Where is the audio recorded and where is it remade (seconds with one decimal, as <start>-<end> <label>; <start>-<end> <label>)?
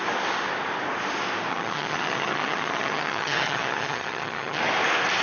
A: 0.0-1.5 recorded; 1.5-4.6 remade; 4.6-5.2 recorded